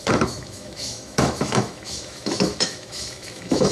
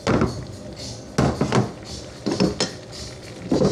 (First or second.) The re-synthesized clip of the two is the first